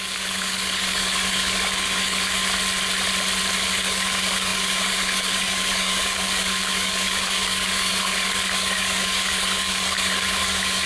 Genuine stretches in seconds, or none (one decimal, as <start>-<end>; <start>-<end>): 2.4-3.7